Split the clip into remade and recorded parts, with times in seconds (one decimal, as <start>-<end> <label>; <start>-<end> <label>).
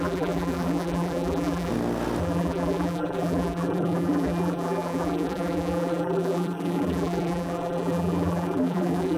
0.0-1.7 remade; 1.7-2.2 recorded; 2.2-9.2 remade